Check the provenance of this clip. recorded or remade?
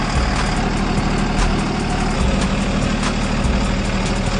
recorded